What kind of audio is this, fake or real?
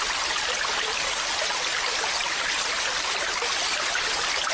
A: real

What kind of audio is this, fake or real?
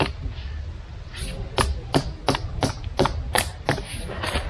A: real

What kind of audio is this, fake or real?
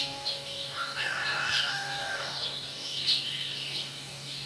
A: fake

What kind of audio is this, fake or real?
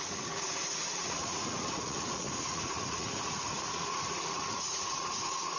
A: fake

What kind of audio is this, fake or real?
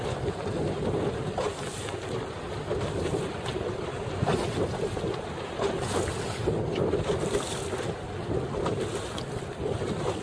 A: real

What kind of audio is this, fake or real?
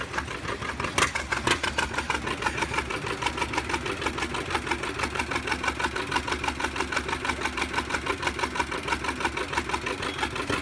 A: real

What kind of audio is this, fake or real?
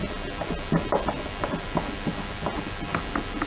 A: real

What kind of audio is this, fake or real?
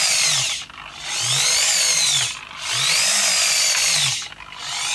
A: real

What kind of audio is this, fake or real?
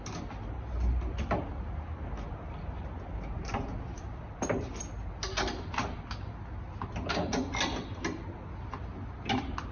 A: real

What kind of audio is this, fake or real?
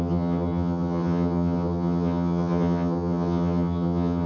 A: fake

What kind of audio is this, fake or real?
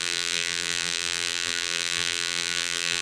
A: fake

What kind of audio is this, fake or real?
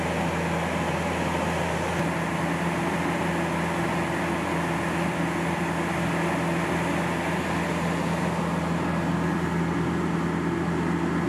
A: real